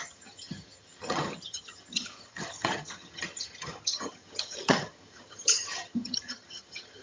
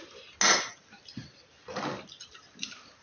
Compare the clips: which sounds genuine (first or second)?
second